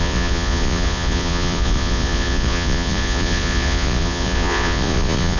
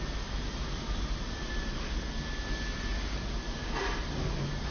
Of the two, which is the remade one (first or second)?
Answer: first